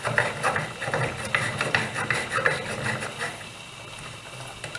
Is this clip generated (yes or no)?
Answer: no